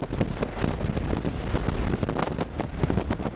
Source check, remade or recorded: recorded